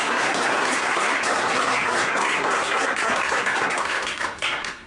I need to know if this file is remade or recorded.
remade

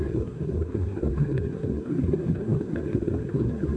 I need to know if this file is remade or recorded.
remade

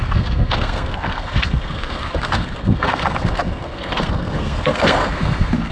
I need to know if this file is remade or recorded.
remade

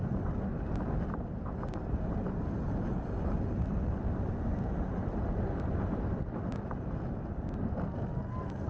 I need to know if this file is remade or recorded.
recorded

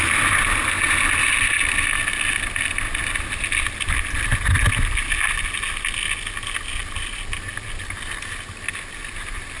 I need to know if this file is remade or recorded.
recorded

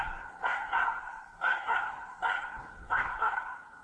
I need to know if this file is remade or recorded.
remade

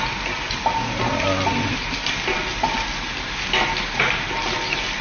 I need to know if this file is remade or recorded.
recorded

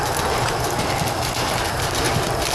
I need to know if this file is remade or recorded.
recorded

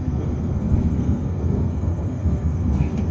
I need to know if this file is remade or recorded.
remade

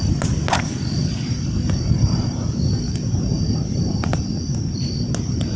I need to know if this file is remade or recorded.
recorded